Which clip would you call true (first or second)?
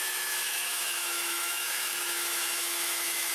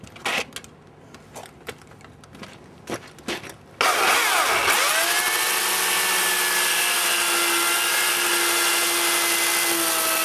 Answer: second